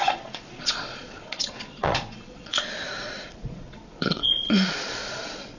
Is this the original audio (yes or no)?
no